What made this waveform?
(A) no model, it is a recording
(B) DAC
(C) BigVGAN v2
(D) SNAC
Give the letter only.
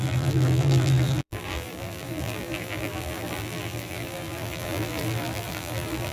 C